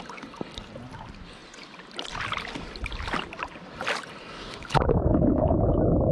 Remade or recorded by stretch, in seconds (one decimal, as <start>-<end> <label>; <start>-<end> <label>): 0.0-4.4 recorded; 4.4-6.1 remade